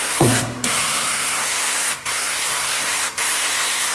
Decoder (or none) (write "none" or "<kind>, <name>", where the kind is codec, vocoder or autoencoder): codec, SNAC